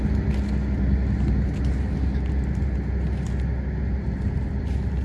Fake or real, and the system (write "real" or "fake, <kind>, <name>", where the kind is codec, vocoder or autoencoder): real